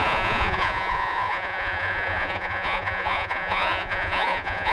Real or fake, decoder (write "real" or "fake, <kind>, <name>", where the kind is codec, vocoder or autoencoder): fake, vocoder, Vocos